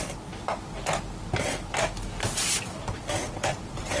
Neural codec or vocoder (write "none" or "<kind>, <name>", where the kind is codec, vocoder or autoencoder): none